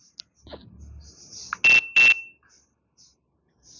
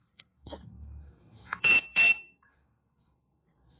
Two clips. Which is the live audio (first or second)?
first